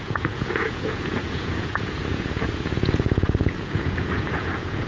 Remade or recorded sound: remade